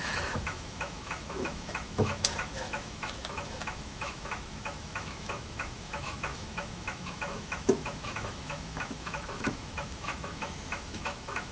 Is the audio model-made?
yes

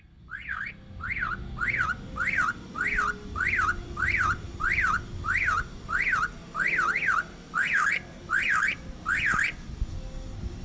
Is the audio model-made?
no